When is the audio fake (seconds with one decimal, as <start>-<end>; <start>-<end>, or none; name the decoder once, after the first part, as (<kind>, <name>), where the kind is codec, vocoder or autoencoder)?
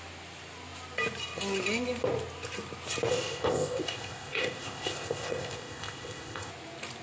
3.1-6.5 (codec, ZipCodec)